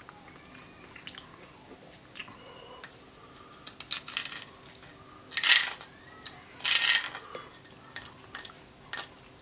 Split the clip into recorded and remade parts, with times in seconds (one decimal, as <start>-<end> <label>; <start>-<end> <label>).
0.0-9.4 recorded